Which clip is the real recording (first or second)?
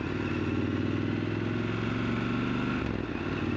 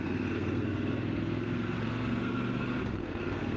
first